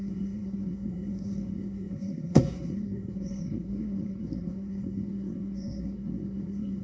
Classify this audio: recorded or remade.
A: remade